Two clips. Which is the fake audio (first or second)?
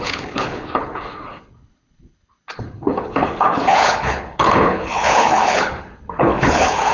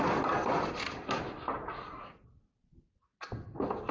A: first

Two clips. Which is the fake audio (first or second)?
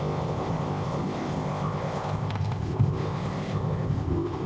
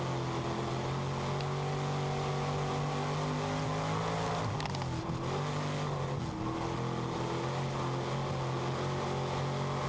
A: first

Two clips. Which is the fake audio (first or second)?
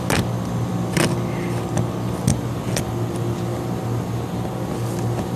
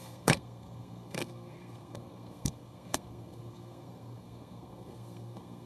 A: second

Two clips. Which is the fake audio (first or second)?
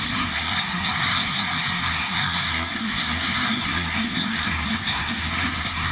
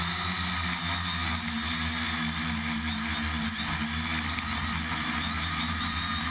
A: first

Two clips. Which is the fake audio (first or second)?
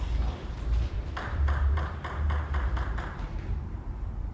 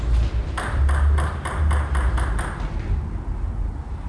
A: first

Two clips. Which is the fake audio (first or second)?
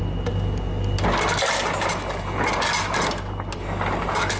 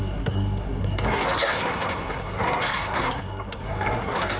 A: second